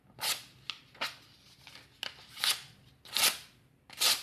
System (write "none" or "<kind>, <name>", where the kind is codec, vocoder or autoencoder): none